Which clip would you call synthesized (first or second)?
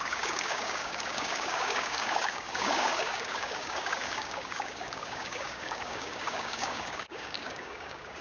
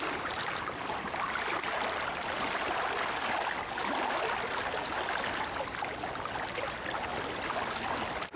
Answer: first